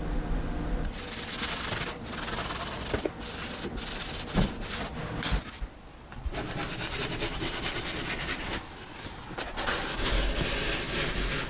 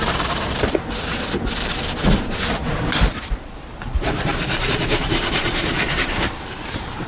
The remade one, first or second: second